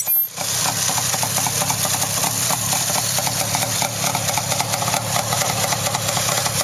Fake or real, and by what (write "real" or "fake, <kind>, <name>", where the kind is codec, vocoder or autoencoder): real